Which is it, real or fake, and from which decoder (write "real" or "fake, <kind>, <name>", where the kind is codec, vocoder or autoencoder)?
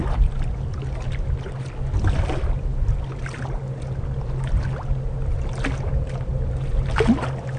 real